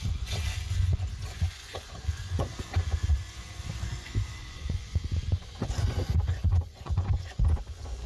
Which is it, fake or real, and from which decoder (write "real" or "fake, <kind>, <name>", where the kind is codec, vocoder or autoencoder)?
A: fake, vocoder, Vocos